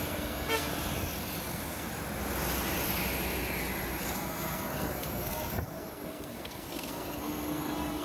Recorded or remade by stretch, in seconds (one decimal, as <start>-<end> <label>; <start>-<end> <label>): 0.0-0.7 remade; 0.7-1.5 recorded; 1.5-1.9 remade; 1.9-4.0 recorded; 4.0-8.0 remade

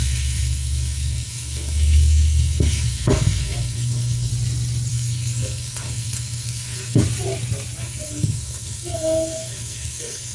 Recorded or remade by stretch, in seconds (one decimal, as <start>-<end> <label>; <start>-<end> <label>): 0.0-4.3 remade; 4.3-4.9 recorded; 4.9-7.0 remade; 7.0-7.8 recorded; 7.8-10.3 remade

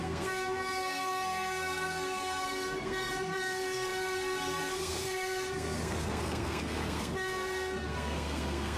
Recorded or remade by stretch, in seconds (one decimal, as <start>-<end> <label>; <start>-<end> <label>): 0.0-8.8 remade

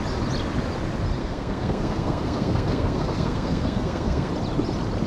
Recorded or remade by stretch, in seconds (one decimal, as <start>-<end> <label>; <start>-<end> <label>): 0.0-1.2 recorded; 1.2-4.3 remade; 4.3-5.1 recorded

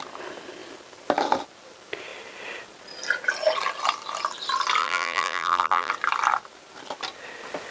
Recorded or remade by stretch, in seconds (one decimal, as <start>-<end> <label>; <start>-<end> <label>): 0.0-4.8 recorded; 4.8-5.9 remade; 5.9-7.7 recorded

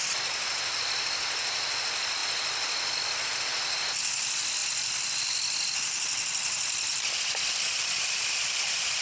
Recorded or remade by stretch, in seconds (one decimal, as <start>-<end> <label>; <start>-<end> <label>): 0.0-9.0 recorded

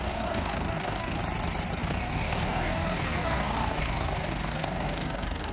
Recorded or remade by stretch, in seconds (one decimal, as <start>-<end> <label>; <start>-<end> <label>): 0.0-1.2 remade; 1.2-1.8 recorded; 1.8-5.5 remade